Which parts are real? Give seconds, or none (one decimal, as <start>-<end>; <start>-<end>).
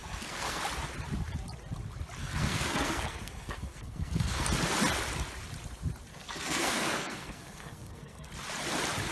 0.6-2.2; 4.5-6.1; 8.3-9.1